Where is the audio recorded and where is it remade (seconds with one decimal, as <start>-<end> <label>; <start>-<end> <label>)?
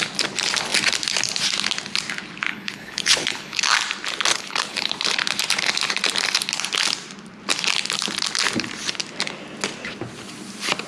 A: 0.0-2.5 recorded; 2.5-3.6 remade; 3.6-4.3 recorded; 4.3-4.9 remade; 4.9-10.9 recorded